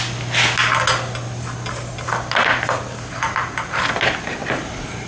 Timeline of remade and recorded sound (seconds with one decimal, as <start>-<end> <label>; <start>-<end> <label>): 0.0-5.1 recorded